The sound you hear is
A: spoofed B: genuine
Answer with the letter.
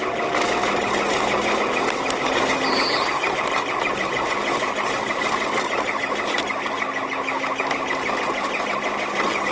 B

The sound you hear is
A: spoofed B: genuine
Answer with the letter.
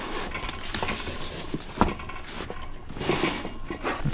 B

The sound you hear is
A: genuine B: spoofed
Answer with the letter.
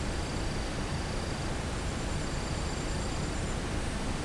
A